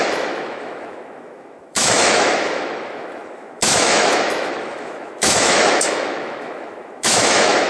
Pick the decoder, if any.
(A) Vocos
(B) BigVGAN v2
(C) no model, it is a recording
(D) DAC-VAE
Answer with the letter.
D